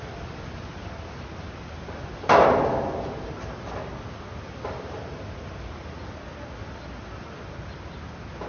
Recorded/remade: recorded